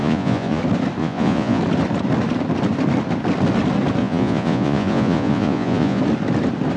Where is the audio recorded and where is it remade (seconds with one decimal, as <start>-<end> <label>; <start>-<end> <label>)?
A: 0.0-0.6 remade; 0.6-1.0 recorded; 1.0-1.6 remade; 1.6-4.0 recorded; 4.0-6.0 remade; 6.0-6.8 recorded